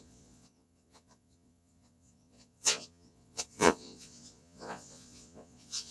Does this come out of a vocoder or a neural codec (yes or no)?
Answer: yes